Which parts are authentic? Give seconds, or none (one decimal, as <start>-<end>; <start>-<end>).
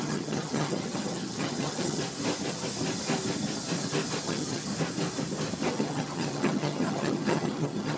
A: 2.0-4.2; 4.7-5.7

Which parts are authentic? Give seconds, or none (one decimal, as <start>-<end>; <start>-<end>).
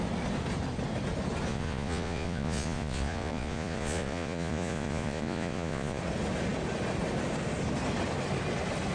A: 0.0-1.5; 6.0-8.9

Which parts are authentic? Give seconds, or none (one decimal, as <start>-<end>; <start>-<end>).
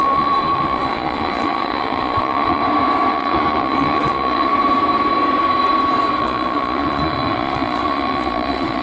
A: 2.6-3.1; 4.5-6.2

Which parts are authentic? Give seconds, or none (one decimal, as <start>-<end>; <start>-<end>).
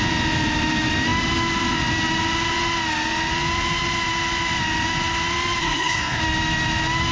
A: 0.0-5.6; 6.2-7.1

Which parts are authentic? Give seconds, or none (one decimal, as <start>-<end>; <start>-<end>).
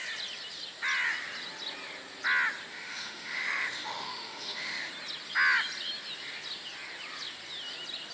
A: 0.0-2.7; 4.9-8.1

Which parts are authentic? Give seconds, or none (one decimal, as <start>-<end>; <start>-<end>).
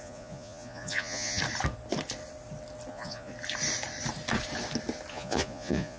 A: 1.4-2.9; 3.3-5.1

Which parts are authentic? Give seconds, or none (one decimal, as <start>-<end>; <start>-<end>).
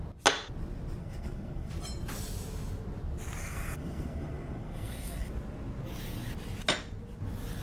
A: 0.0-1.0; 1.7-3.4; 5.3-7.6